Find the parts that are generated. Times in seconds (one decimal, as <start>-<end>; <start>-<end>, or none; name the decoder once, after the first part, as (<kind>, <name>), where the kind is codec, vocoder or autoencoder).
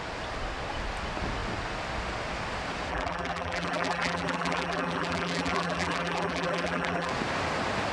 2.9-7.1 (vocoder, BigVGAN v2)